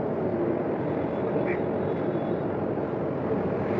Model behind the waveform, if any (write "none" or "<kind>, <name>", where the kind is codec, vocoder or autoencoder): none